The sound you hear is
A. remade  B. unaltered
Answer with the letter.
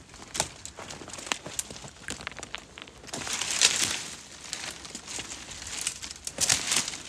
B